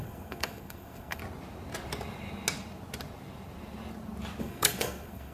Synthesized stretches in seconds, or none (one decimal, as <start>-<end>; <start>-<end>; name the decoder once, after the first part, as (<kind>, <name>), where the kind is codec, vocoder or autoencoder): 0.0-1.2 (codec, SNAC); 4.4-5.3